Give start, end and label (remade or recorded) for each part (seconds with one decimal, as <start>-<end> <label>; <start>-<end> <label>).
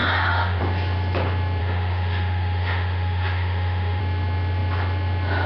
0.0-0.6 remade; 0.6-1.6 recorded; 1.6-4.0 remade; 4.0-5.5 recorded